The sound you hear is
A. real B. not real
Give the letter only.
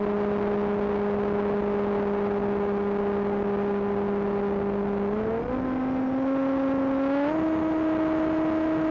A